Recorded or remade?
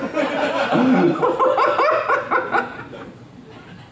recorded